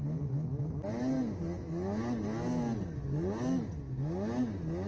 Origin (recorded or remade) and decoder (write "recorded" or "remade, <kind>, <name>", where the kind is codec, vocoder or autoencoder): recorded